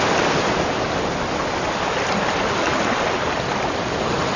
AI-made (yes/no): no